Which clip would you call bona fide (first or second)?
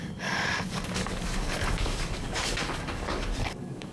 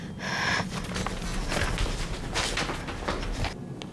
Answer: second